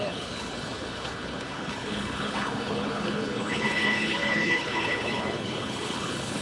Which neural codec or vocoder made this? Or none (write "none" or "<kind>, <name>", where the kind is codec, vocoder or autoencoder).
codec, HILCodec